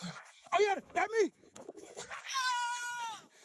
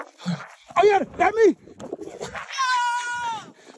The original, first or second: second